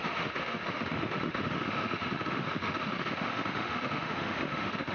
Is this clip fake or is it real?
fake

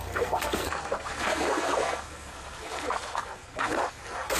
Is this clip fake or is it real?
fake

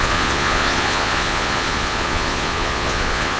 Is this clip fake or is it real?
fake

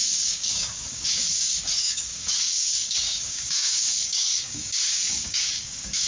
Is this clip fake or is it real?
fake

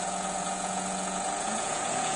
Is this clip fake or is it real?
fake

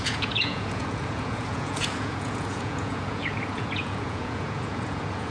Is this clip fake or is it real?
fake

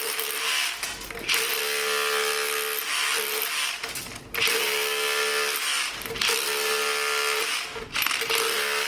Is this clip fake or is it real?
real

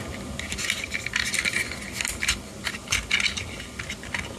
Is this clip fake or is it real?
real